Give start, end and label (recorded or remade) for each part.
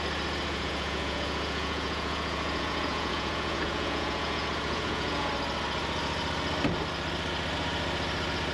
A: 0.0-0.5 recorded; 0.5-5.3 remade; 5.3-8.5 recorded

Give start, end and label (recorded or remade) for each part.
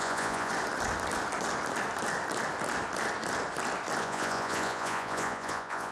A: 0.0-0.5 remade; 0.5-4.0 recorded; 4.0-5.9 remade